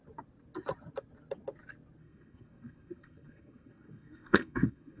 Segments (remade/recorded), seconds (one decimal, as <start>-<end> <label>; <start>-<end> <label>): 0.0-2.0 recorded; 2.0-5.0 remade